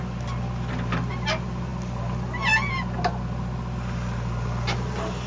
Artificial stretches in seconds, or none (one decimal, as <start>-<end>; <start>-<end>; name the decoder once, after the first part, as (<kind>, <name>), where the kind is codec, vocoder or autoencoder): none